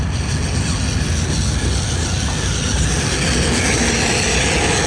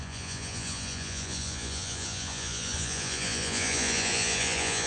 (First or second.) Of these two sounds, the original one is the first